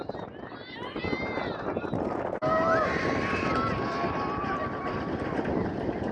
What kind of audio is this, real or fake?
real